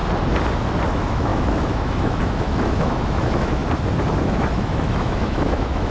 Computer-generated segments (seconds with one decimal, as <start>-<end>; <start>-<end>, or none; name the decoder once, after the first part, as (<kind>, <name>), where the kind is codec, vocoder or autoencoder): 0.9-3.6 (autoencoder, DAC-VAE); 4.2-5.9